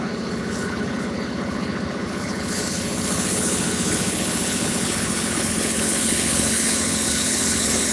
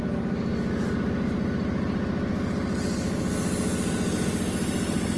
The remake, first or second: first